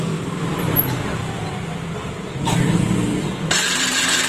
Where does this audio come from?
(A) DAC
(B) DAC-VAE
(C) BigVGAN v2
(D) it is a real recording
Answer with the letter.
D